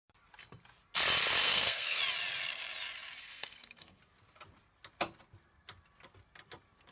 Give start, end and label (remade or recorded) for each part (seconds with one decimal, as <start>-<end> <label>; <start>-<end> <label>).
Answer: 0.0-1.4 recorded; 1.4-2.0 remade; 2.0-3.2 recorded; 3.2-4.0 remade; 4.0-6.9 recorded